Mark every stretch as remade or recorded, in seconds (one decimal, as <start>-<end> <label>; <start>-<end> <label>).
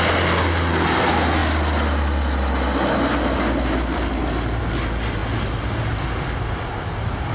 0.0-7.3 recorded